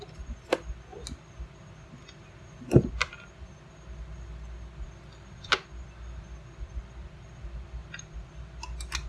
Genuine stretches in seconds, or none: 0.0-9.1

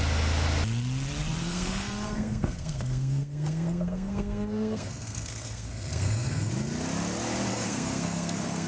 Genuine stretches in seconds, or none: 0.0-1.4; 6.5-7.5